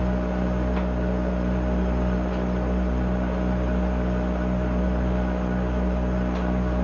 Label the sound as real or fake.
real